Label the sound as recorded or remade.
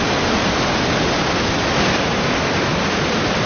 remade